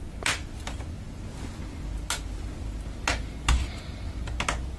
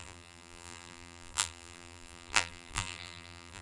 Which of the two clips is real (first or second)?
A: first